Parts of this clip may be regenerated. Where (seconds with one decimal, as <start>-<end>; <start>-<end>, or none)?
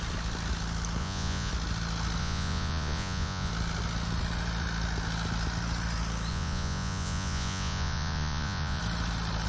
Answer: 1.0-1.5; 2.2-3.5; 6.3-8.8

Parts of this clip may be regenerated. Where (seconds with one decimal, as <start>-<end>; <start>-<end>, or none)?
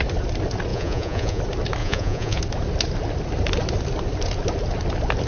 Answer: 0.7-1.4; 1.8-2.4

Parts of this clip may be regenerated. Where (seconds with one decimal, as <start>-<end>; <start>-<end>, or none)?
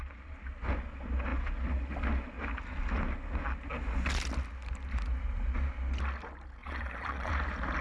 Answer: 6.6-7.3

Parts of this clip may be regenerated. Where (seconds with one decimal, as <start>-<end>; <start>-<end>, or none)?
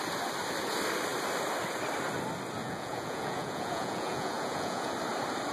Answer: 2.6-4.9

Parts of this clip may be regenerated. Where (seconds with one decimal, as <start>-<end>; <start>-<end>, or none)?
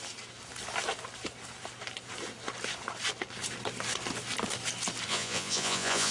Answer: 5.1-6.1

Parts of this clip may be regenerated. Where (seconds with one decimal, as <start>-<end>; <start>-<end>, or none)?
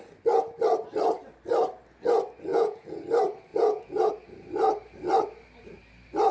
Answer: 2.5-3.0; 3.5-4.1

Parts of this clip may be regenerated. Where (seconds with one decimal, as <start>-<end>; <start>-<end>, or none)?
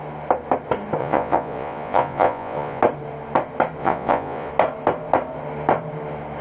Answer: 1.0-2.8; 3.8-4.5